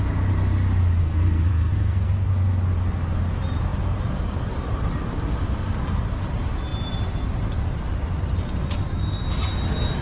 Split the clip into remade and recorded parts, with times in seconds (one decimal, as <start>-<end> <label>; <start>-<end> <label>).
0.0-1.0 recorded; 1.0-2.3 remade; 2.3-10.0 recorded